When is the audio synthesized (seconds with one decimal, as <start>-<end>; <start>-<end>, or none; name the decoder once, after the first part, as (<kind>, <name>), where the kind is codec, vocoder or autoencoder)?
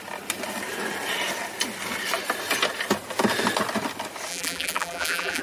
4.3-5.4 (vocoder, BigVGAN v2)